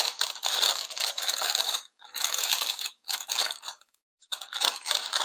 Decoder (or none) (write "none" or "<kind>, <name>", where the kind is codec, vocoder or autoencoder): codec, DAC